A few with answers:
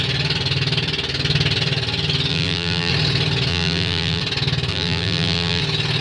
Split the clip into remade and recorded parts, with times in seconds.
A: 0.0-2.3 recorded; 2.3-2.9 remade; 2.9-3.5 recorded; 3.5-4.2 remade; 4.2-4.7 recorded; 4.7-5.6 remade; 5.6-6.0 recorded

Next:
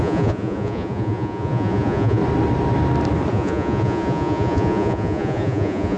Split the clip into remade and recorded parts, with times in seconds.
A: 0.0-2.2 remade; 2.2-3.3 recorded; 3.3-6.0 remade

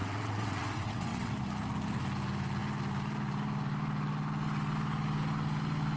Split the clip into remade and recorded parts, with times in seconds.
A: 0.0-1.3 remade; 1.3-6.0 recorded